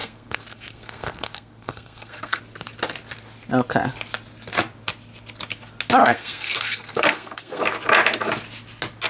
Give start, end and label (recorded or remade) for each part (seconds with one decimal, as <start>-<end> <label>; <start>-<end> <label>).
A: 0.0-2.4 remade; 2.4-6.0 recorded; 6.0-7.6 remade; 7.6-9.1 recorded